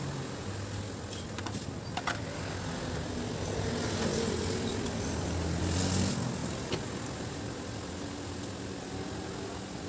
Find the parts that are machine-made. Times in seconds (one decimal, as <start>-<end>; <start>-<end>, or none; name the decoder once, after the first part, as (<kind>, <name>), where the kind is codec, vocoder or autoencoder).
none